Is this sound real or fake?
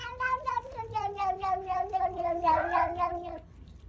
fake